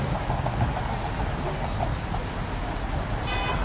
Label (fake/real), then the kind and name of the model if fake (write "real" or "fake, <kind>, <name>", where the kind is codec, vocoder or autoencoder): real